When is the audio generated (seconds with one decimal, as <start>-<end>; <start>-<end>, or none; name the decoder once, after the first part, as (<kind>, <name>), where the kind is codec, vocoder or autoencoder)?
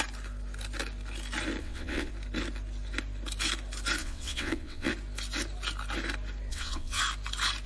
1.6-2.1 (vocoder, WaveNeXt); 4.0-4.9; 6.5-7.0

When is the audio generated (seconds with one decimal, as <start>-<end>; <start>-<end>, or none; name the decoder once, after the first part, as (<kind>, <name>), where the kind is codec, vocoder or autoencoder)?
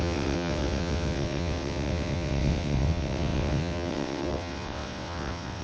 0.0-5.6 (vocoder, WaveNeXt)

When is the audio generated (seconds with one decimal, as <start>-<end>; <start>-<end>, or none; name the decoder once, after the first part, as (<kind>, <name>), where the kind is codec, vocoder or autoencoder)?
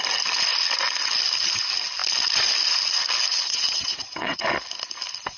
3.3-4.4 (vocoder, WaveNeXt)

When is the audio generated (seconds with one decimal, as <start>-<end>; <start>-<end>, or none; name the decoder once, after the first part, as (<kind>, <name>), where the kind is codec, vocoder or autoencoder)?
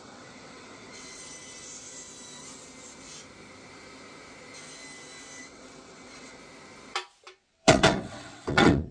0.0-1.2 (vocoder, WaveNeXt); 5.4-6.4; 7.5-8.9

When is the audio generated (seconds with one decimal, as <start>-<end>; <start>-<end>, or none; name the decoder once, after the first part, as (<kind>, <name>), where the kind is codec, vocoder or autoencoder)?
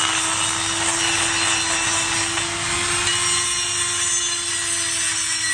none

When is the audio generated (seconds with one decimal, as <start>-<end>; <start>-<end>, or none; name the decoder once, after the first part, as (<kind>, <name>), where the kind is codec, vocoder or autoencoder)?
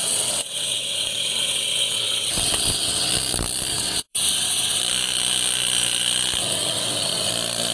0.0-3.1 (vocoder, WaveNeXt); 3.7-4.8; 6.4-7.3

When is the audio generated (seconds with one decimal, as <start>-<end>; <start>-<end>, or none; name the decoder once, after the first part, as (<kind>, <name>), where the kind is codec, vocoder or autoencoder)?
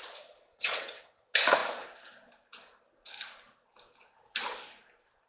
0.5-1.2 (vocoder, WaveNeXt)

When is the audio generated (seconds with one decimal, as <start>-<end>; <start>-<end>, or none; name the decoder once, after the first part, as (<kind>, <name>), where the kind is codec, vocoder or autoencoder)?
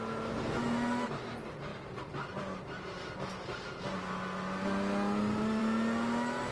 none